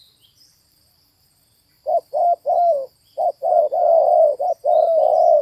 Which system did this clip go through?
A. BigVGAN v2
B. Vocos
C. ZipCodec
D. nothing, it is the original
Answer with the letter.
A